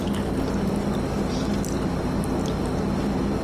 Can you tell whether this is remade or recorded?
recorded